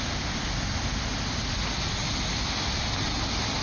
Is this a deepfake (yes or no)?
no